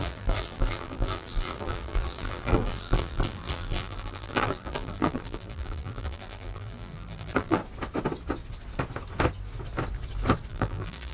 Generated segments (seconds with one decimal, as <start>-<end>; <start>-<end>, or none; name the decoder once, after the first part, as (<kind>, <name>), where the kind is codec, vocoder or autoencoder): 0.0-7.6 (vocoder, BigVGAN v2); 10.5-11.1